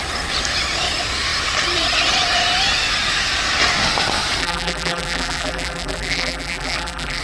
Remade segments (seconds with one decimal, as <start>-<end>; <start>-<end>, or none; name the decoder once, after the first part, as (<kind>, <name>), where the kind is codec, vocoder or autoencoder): 4.4-7.2 (vocoder, BigVGAN v2)